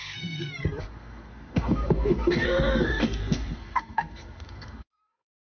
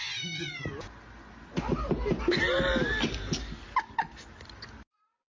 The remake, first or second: first